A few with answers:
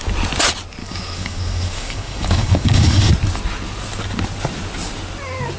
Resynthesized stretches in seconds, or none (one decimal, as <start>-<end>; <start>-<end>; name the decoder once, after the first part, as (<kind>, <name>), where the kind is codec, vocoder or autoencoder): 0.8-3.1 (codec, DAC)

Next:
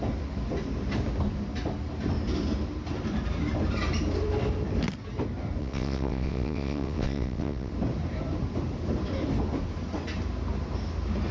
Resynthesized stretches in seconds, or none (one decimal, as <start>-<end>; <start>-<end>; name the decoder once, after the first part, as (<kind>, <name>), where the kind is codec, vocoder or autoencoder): 5.6-7.7 (vocoder, WaveNeXt)

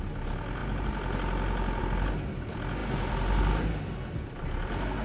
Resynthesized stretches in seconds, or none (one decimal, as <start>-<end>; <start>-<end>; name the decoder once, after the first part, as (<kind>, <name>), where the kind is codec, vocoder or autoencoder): none

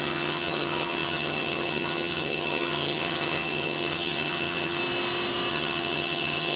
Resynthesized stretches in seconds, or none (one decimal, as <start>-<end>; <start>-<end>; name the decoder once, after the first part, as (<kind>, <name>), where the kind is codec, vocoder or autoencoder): 0.0-4.8 (vocoder, HiFi-GAN); 5.5-6.6